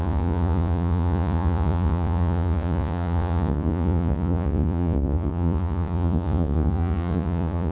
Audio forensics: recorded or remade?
remade